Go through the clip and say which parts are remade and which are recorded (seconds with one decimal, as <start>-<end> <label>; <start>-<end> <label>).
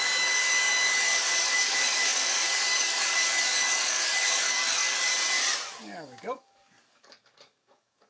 0.0-5.1 remade; 5.1-5.8 recorded; 5.8-8.1 remade